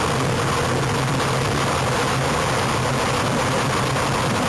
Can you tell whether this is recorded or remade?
recorded